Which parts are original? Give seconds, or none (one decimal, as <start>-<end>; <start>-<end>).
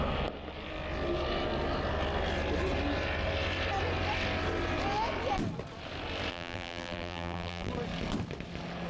0.0-6.3; 7.7-8.9